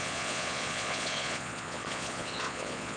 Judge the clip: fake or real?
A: fake